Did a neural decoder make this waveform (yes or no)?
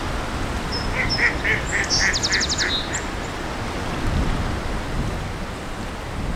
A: no